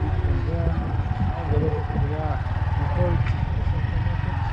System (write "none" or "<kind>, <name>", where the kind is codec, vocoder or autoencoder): none